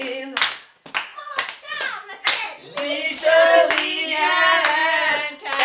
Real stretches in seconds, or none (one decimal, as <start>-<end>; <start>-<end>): 0.0-1.1; 1.9-5.6